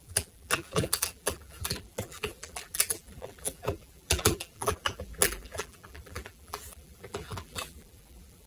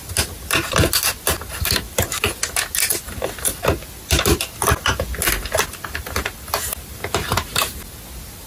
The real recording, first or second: second